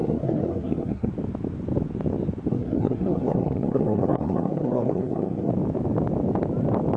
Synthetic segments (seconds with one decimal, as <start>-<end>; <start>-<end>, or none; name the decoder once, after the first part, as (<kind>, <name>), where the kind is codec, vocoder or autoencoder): 0.0-1.1 (codec, SNAC); 2.5-5.5